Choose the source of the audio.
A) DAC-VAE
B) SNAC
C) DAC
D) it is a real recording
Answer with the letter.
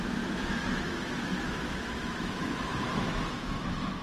A